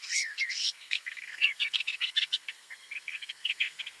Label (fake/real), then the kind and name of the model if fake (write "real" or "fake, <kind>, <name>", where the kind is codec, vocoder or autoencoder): fake, codec, SNAC